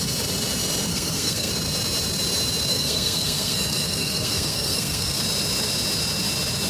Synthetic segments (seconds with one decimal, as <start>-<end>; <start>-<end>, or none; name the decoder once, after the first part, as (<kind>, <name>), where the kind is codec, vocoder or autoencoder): 0.9-1.5 (codec, SNAC); 2.7-5.2